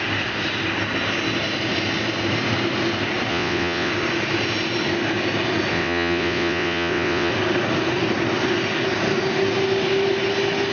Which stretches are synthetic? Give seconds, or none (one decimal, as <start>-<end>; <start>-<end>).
3.3-3.9; 5.7-7.3